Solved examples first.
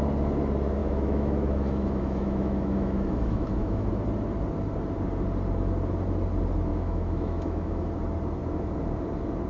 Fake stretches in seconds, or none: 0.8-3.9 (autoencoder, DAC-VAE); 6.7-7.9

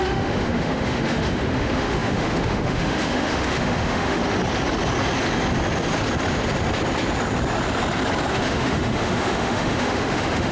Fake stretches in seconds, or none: 0.0-4.2 (autoencoder, DAC-VAE); 8.3-10.5

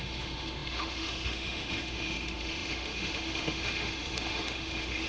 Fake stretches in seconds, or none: 0.0-5.1 (autoencoder, DAC-VAE)

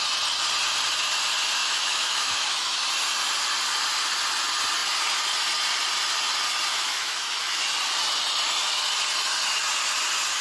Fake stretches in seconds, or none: 1.6-2.8 (autoencoder, DAC-VAE); 6.7-7.6

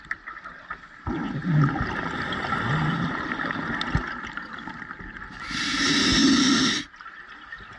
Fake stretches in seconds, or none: none